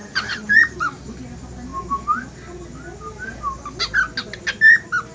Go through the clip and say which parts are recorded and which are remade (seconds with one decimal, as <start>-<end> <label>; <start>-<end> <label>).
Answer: 0.0-1.2 remade; 1.2-5.1 recorded